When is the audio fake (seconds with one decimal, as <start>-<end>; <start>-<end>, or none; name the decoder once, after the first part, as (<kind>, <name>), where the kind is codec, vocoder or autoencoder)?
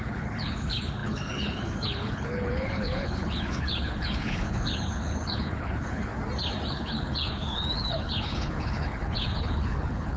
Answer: 0.0-6.1 (codec, HILCodec); 6.7-10.2